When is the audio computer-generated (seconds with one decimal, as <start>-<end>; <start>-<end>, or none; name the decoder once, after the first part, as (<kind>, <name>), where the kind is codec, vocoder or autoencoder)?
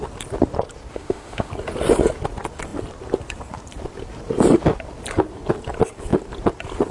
0.9-1.5 (autoencoder, DAC-VAE)